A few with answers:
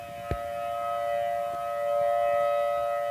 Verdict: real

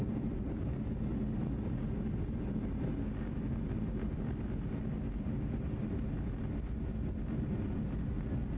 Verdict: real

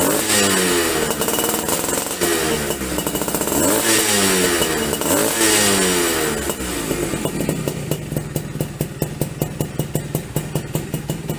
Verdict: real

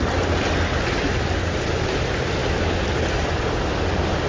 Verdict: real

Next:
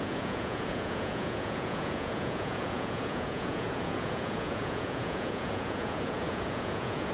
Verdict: fake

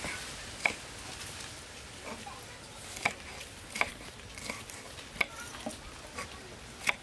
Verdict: real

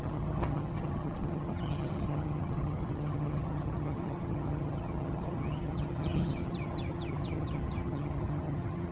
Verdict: fake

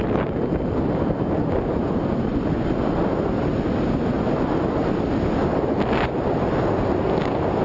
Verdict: real